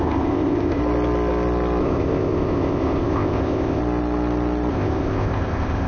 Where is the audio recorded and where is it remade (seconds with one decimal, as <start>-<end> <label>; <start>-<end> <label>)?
0.0-0.8 remade; 0.8-1.8 recorded; 1.8-3.8 remade; 3.8-4.7 recorded; 4.7-5.9 remade